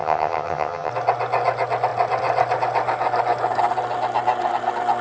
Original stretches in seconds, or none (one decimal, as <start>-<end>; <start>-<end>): 0.9-5.0